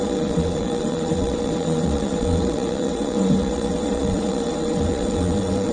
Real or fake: fake